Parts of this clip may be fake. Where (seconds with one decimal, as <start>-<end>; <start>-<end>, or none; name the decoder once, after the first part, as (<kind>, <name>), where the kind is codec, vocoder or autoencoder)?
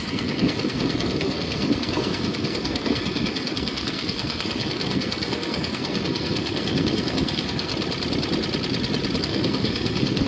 0.0-7.7 (codec, SNAC); 9.2-10.3